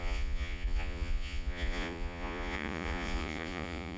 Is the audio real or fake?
fake